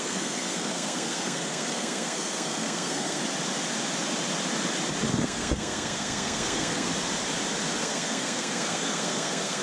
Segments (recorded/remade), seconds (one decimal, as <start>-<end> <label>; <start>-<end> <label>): 0.0-3.2 remade; 3.2-5.1 recorded; 5.1-6.9 remade; 6.9-7.8 recorded; 7.8-9.6 remade